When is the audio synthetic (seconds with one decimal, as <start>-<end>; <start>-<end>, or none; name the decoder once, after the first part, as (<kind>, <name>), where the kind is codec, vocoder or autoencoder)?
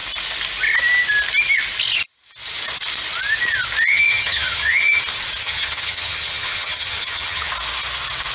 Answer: 3.9-5.0 (vocoder, HiFi-GAN); 5.4-7.5